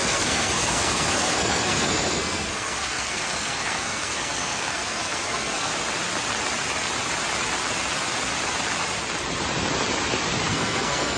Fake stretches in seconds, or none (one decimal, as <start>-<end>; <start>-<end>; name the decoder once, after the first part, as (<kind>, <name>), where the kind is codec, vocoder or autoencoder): 0.0-5.7 (codec, SNAC); 10.5-11.2